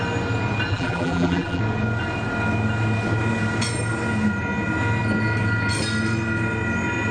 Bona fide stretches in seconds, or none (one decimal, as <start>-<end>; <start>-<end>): 0.0-0.7; 1.6-7.1